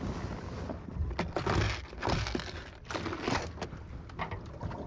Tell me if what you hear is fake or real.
real